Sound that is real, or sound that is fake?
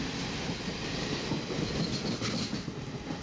real